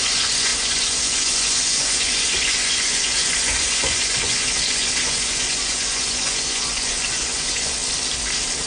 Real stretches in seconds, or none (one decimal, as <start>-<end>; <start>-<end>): 7.8-8.7